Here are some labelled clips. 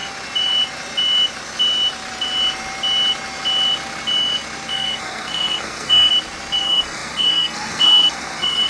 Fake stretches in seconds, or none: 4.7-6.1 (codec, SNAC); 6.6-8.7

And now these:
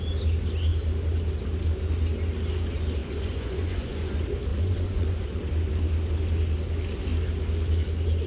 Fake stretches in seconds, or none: 3.0-4.1 (vocoder, Vocos); 4.5-5.4

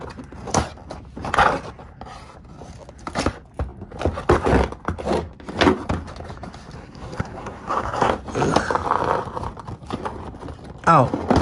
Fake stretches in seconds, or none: 6.8-8.1 (codec, SNAC)